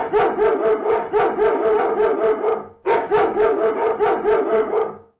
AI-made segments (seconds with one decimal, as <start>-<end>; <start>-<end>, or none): 2.8-3.7; 4.5-5.2